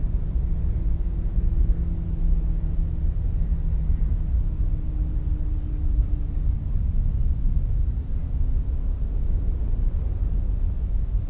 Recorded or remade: recorded